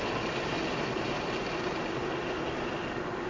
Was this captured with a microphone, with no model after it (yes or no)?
yes